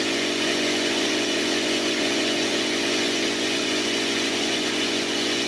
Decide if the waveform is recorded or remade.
remade